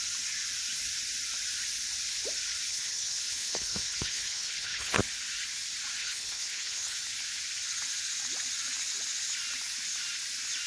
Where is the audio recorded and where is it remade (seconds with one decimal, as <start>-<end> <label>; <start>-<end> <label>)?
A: 0.0-2.7 recorded; 2.7-5.0 remade; 5.0-6.0 recorded; 6.0-7.0 remade; 7.0-10.7 recorded